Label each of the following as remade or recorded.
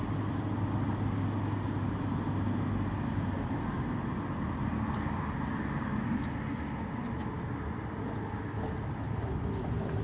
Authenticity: recorded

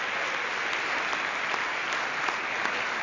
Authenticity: recorded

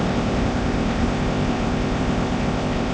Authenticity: remade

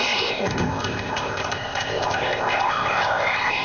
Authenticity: remade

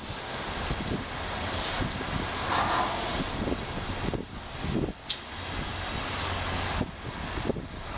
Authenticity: recorded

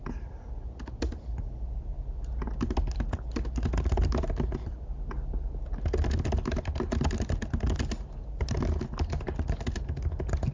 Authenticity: recorded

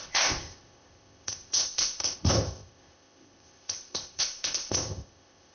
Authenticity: remade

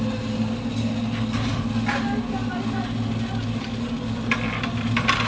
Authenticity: recorded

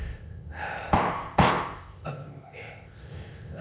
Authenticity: remade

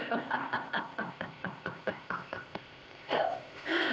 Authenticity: remade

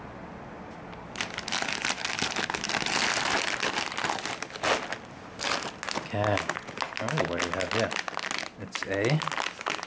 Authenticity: recorded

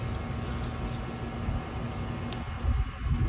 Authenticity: recorded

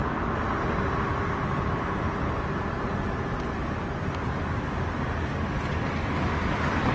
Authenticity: recorded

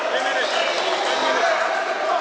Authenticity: recorded